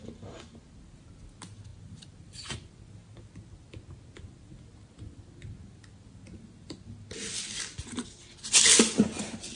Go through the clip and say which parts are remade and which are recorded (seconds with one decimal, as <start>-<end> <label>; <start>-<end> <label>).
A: 0.0-1.7 recorded; 1.7-2.8 remade; 2.8-9.6 recorded